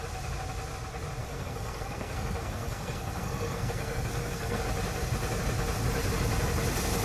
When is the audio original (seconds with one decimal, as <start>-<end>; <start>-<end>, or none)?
0.0-1.2; 4.6-7.0